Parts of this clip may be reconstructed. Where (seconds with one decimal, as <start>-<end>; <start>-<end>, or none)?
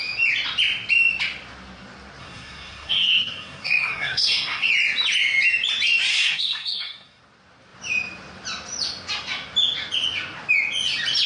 2.2-4.7; 6.1-7.2